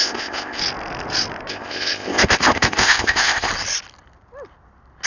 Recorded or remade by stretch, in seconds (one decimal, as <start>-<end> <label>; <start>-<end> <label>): 0.0-0.6 remade; 0.6-1.5 recorded; 1.5-3.5 remade; 3.5-5.1 recorded